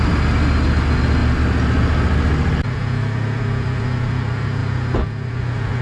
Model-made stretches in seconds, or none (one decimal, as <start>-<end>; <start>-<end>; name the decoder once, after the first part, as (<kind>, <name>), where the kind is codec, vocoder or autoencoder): none

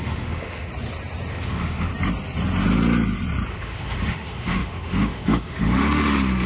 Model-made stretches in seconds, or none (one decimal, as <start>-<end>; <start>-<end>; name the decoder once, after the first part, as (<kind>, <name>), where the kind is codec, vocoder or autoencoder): 0.0-0.7 (autoencoder, DAC-VAE); 1.3-1.9; 3.5-6.5

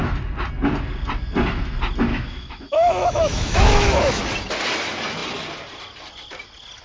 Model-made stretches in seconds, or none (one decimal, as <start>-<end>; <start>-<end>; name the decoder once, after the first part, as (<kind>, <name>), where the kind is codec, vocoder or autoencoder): 2.1-4.2 (autoencoder, DAC-VAE)

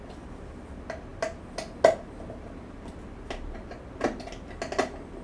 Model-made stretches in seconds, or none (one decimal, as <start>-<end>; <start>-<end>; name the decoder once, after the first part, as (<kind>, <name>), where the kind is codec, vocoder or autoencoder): none

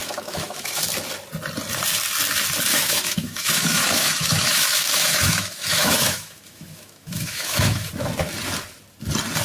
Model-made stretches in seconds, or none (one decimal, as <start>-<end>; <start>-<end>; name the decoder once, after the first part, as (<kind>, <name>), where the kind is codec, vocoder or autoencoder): 0.0-0.8 (autoencoder, DAC-VAE); 2.7-7.9